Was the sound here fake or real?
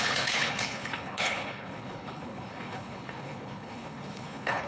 fake